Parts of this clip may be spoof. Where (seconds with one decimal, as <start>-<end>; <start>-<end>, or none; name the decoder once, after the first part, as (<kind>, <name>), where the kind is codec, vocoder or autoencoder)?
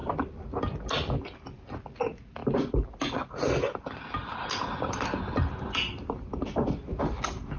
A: none